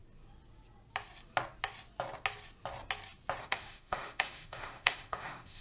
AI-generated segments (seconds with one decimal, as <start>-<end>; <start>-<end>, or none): 3.4-5.6